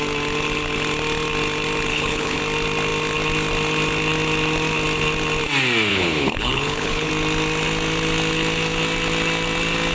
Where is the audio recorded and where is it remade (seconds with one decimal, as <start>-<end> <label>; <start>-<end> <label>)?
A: 0.0-1.9 recorded; 1.9-2.4 remade; 2.4-5.9 recorded; 5.9-7.1 remade; 7.1-9.9 recorded